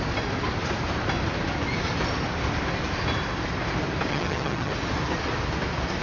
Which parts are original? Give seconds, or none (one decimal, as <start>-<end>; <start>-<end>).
0.0-4.1; 4.7-6.0